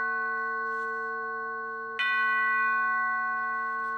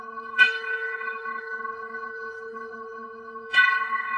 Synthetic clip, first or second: second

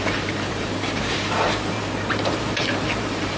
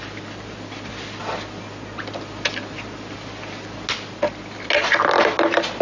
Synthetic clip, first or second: first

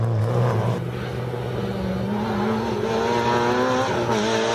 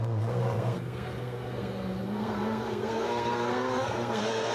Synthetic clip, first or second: second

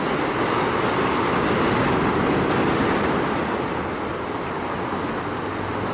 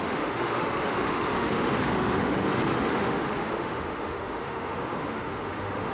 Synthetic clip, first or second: second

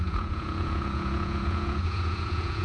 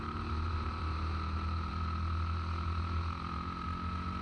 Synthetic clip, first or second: first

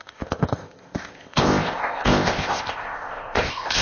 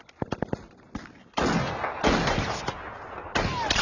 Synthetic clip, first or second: first